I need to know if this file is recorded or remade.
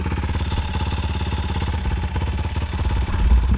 recorded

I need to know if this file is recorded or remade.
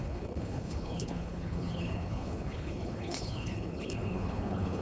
remade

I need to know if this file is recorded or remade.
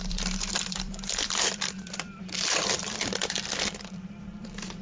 remade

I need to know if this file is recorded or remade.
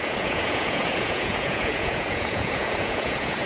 remade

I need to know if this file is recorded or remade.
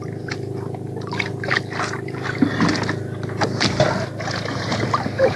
recorded